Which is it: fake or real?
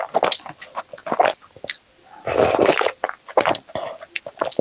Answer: real